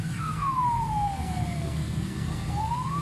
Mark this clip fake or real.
fake